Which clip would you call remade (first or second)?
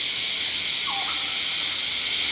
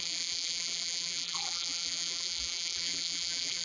second